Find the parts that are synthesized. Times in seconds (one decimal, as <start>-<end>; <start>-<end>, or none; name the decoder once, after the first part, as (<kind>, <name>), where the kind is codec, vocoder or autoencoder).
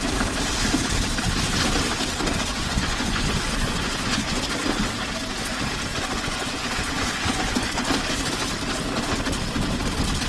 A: 2.5-4.4 (vocoder, Vocos); 5.9-7.9